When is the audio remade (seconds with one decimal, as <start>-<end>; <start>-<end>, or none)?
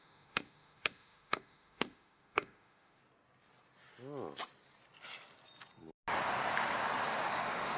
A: 0.0-3.0; 7.2-7.8